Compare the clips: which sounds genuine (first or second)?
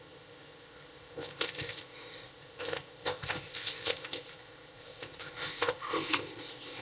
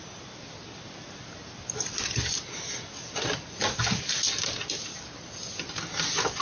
second